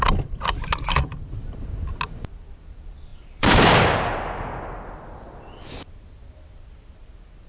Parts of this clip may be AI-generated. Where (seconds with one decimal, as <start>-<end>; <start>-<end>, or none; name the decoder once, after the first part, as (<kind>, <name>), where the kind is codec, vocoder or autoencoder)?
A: 3.1-4.6 (vocoder, BigVGAN v2)